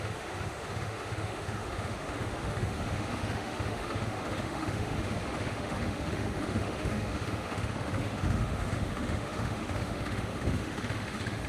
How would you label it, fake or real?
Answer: fake